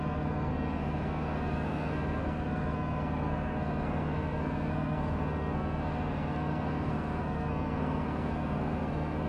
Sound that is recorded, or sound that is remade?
remade